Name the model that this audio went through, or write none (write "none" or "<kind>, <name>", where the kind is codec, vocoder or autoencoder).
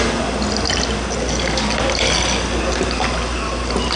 none